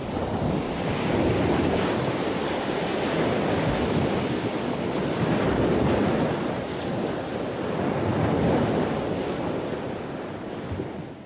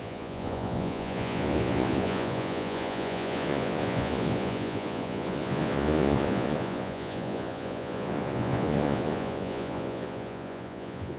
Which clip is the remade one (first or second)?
second